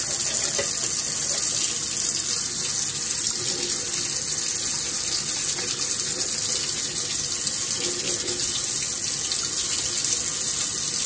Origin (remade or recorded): recorded